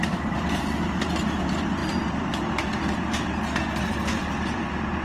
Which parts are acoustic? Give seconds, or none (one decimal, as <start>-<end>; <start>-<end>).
none